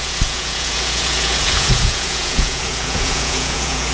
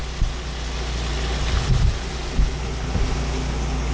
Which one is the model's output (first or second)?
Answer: first